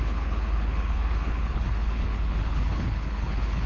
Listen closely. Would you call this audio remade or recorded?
remade